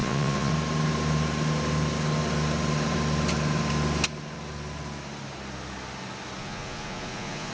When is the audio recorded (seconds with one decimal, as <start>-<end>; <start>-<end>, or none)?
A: 0.5-6.4